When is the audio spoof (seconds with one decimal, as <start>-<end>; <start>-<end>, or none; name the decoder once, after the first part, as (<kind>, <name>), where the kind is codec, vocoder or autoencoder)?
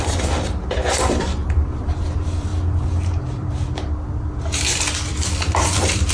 0.0-6.1 (vocoder, BigVGAN v2)